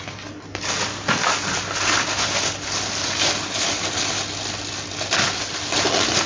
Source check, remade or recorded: recorded